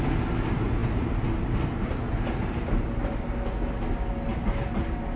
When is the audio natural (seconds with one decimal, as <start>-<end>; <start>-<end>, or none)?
0.0-5.2